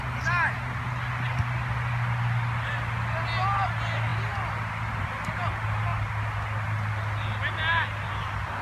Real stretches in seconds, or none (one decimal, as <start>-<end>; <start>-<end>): 0.0-8.6